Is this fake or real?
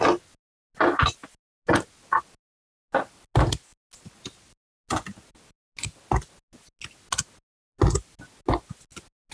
real